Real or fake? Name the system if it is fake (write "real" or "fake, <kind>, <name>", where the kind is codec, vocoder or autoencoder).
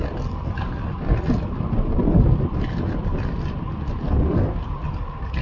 real